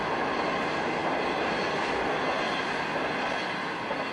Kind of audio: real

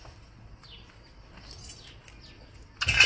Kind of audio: real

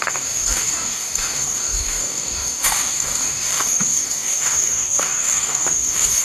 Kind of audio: fake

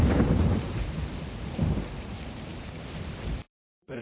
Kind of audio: fake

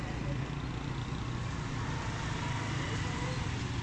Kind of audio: real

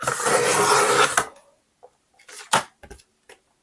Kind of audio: real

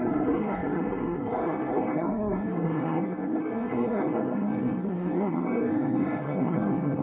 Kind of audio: fake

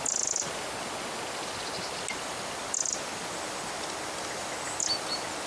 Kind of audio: real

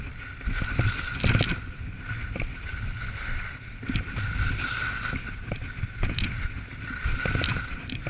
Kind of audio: real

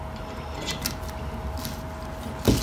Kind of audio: real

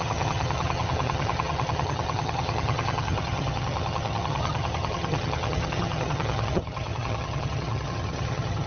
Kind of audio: fake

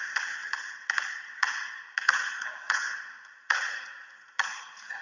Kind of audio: fake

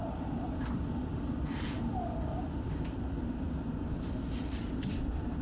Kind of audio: real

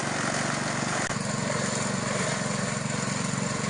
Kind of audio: real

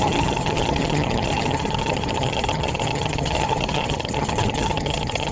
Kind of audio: fake